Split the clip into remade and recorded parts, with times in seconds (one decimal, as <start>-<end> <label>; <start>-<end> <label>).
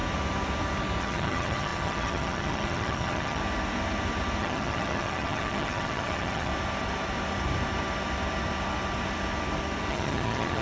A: 0.0-1.0 recorded; 1.0-3.4 remade; 3.4-4.4 recorded; 4.4-6.5 remade; 6.5-9.9 recorded; 9.9-10.6 remade